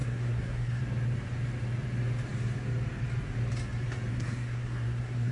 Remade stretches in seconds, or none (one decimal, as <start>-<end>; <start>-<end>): 0.0-0.8; 4.1-5.3

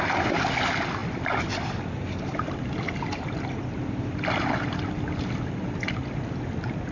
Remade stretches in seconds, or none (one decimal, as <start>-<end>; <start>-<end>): none

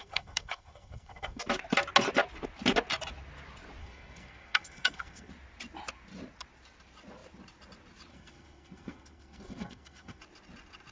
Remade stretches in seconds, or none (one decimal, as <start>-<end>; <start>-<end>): 0.0-1.4; 3.8-5.3; 8.1-10.2